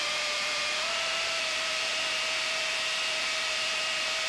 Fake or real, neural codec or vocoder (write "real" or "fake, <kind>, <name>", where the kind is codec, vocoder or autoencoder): fake, vocoder, BigVGAN v2